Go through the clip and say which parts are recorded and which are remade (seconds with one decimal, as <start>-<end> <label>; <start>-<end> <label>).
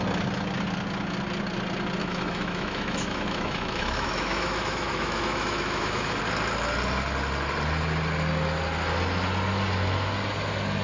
0.0-2.0 recorded; 2.0-6.2 remade; 6.2-10.8 recorded